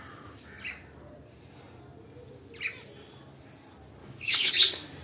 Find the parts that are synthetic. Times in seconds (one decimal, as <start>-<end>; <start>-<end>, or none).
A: 4.0-4.5